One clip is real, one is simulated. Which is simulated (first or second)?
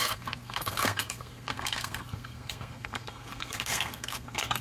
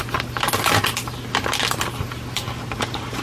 first